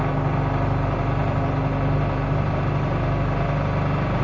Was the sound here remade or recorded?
recorded